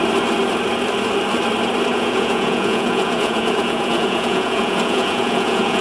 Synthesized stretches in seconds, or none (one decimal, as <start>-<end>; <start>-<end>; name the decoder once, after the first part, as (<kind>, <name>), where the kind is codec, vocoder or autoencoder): 1.9-5.8 (vocoder, Vocos)